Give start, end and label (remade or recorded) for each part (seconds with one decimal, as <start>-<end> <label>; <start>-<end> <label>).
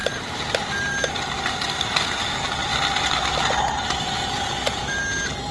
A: 0.0-1.1 remade; 1.1-2.7 recorded; 2.7-5.0 remade; 5.0-5.5 recorded